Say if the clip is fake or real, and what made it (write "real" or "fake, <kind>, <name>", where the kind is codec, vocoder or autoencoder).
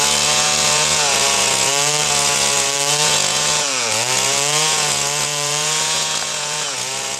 fake, vocoder, Vocos